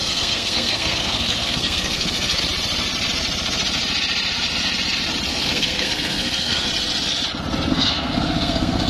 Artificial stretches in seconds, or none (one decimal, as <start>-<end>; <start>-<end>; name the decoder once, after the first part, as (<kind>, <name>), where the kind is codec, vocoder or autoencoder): 0.0-2.4 (codec, SNAC); 5.3-6.7; 7.7-8.9